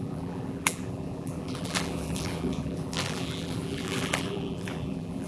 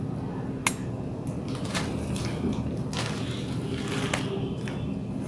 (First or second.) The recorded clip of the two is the second